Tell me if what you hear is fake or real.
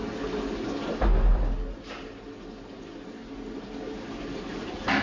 real